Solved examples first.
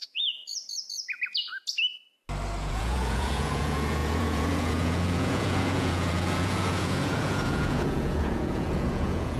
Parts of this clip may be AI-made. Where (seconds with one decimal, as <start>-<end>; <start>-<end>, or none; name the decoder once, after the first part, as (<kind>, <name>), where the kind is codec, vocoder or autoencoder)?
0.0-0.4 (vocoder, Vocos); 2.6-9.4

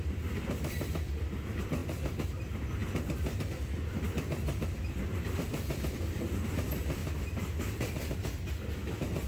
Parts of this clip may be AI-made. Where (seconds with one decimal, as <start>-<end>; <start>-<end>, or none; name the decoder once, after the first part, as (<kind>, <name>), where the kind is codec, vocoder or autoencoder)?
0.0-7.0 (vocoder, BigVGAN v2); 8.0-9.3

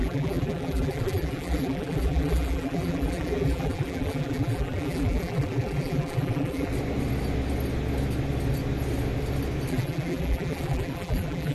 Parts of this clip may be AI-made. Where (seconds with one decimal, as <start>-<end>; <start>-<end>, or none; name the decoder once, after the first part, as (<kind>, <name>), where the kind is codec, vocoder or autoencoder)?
0.0-6.7 (vocoder, BigVGAN v2); 9.7-11.5

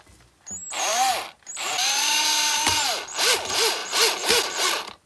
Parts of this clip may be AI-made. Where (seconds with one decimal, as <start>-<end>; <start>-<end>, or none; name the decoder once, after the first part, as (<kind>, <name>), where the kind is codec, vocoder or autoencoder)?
none